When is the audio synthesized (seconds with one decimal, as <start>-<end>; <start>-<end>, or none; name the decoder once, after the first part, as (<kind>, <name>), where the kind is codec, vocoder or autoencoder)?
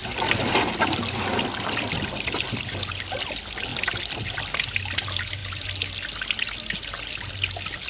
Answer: none